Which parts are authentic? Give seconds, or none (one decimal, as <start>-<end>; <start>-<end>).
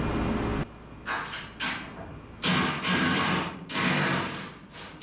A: 0.0-5.0